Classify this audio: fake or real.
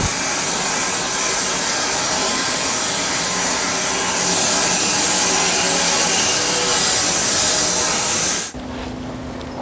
real